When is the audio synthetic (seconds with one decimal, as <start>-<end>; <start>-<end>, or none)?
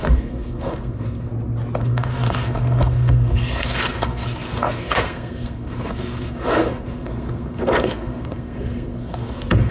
0.0-1.3; 1.8-9.7